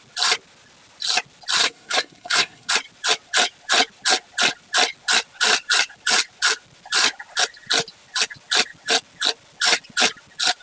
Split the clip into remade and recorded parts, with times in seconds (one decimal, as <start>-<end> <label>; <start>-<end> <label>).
0.0-1.6 recorded; 1.6-2.7 remade; 2.7-10.6 recorded